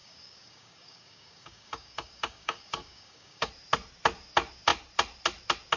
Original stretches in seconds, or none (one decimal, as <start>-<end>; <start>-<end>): 3.5-5.8